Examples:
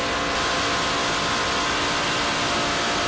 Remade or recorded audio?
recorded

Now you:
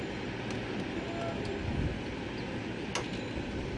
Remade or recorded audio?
recorded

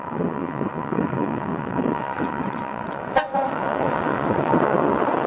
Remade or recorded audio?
remade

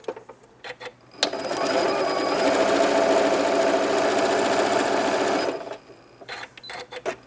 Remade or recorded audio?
recorded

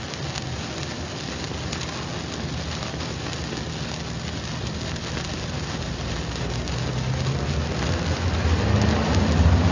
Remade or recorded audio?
recorded